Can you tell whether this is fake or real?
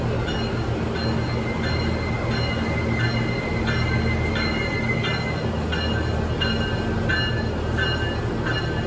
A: real